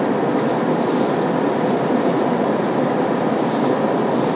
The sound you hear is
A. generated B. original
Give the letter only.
B